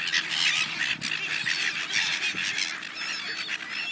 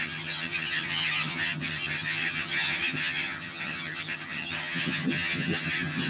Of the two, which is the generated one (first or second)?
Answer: second